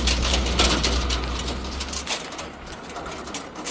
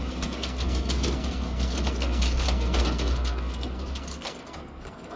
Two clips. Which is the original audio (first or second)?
first